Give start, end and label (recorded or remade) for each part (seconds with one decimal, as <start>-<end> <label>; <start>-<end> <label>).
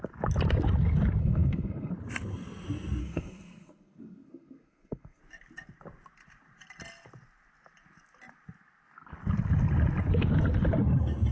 0.0-1.2 recorded; 1.2-1.9 remade; 1.9-3.0 recorded; 3.0-5.2 remade; 5.2-11.3 recorded